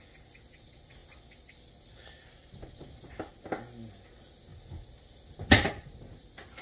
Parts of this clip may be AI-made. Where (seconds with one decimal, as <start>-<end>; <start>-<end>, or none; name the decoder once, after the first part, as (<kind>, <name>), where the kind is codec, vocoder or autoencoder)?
1.0-3.3 (vocoder, BigVGAN v2)